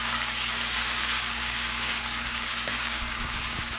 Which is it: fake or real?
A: fake